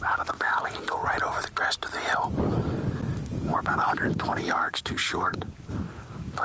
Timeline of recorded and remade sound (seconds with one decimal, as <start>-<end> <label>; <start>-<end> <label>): 0.0-1.0 remade; 1.0-2.3 recorded; 2.3-6.4 remade